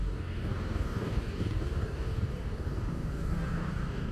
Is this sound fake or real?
fake